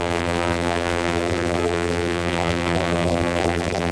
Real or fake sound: fake